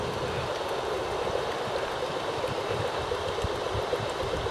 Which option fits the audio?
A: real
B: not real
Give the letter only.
B